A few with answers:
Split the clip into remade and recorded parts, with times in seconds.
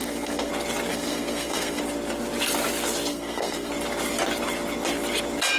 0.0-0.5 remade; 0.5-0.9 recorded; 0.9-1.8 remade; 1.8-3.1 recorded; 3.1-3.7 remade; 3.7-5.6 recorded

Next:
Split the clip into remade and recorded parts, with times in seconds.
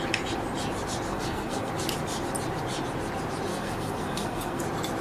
0.0-1.1 recorded; 1.1-1.7 remade; 1.7-3.5 recorded; 3.5-4.6 remade; 4.6-5.0 recorded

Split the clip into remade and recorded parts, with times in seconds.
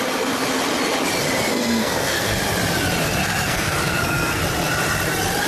0.0-1.5 recorded; 1.5-2.4 remade; 2.4-3.2 recorded; 3.2-4.4 remade; 4.4-5.5 recorded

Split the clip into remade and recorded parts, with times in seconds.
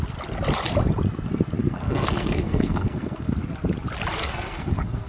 0.0-1.6 recorded; 1.6-3.3 remade; 3.3-4.2 recorded; 4.2-5.1 remade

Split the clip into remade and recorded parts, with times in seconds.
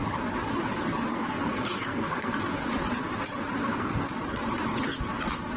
0.0-1.1 recorded; 1.1-2.4 remade; 2.4-3.6 recorded; 3.6-4.1 remade; 4.1-5.6 recorded